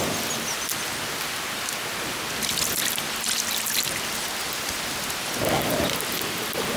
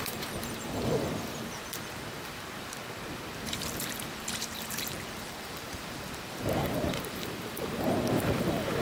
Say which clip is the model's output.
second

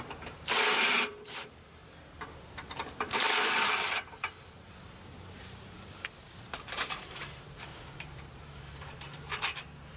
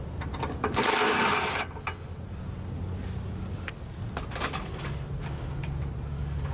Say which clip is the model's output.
first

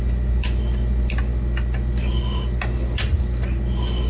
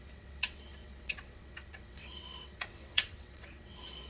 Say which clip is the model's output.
second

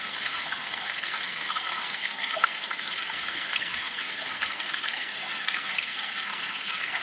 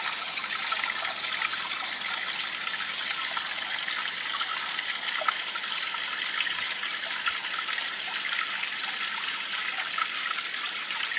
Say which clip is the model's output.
first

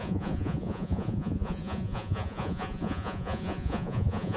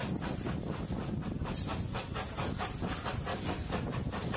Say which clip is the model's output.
first